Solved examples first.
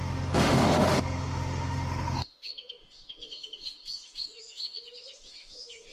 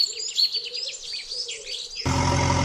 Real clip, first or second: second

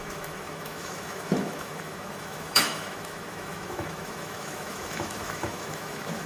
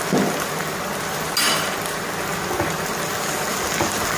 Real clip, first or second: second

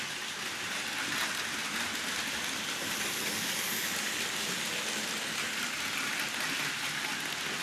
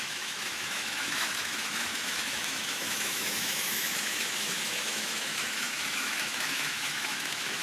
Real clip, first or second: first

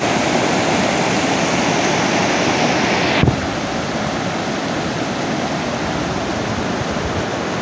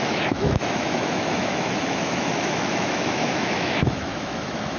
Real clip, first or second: first